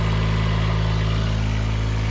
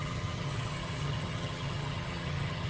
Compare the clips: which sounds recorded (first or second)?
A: first